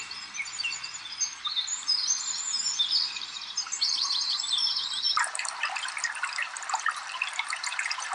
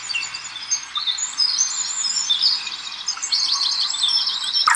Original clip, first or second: second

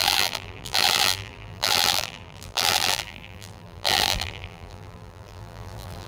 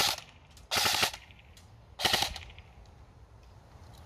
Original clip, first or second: second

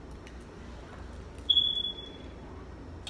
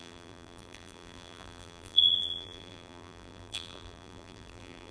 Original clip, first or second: first